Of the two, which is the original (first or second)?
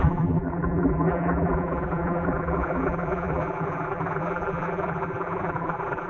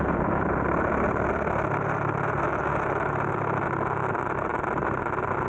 second